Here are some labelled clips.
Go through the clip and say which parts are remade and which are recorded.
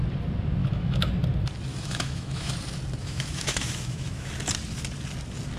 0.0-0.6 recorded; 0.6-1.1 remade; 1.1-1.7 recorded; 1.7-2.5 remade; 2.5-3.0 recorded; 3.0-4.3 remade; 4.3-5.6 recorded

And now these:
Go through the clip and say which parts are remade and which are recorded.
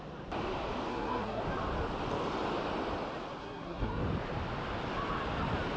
0.0-0.9 recorded; 0.9-1.4 remade; 1.4-3.4 recorded; 3.4-4.0 remade; 4.0-5.8 recorded